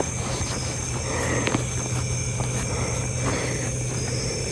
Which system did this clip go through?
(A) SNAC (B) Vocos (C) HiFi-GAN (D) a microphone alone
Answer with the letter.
D